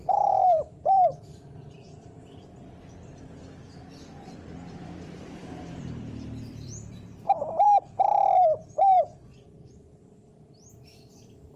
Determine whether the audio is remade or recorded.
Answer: remade